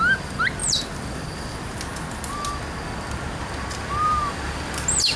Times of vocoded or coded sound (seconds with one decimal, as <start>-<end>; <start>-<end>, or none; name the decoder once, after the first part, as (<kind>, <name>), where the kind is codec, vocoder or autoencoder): none